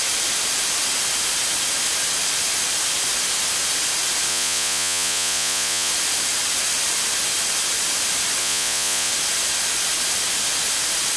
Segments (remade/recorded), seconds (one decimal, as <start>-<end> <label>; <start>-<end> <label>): 0.0-4.3 recorded; 4.3-5.9 remade; 5.9-8.4 recorded; 8.4-9.1 remade; 9.1-11.2 recorded